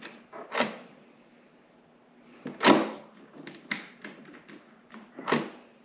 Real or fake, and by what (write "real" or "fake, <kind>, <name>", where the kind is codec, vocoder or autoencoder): real